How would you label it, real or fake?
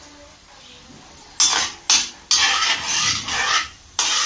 real